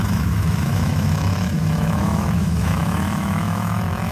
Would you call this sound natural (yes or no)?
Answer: no